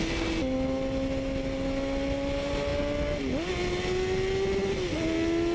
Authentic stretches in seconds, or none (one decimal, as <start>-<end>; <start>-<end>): 0.0-5.5